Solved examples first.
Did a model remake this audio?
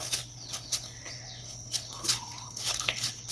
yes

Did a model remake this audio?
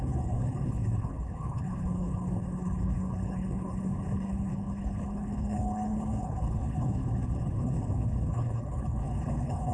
yes